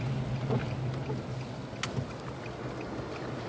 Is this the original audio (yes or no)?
yes